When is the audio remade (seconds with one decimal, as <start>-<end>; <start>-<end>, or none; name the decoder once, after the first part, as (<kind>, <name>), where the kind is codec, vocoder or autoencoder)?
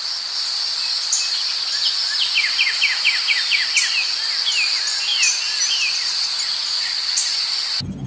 none